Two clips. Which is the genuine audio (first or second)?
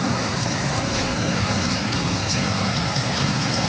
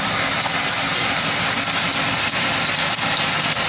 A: second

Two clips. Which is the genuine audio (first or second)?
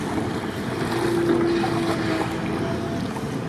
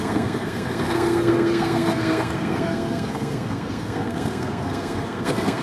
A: first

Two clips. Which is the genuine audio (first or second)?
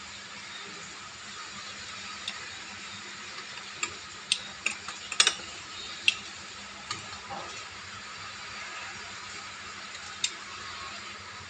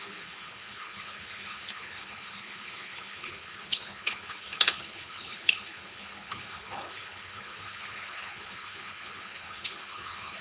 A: first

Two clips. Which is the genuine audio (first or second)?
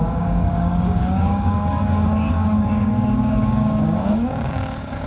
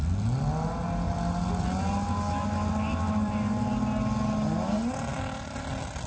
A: second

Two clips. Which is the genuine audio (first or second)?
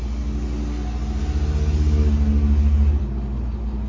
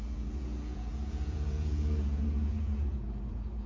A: first